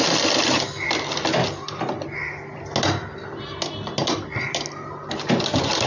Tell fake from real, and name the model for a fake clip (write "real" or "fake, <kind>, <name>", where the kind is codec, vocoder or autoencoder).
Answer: real